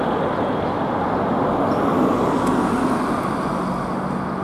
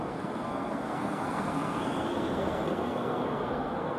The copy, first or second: second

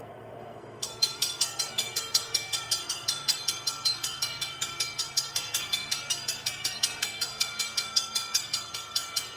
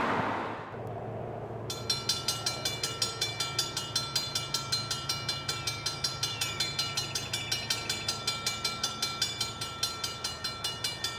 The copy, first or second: first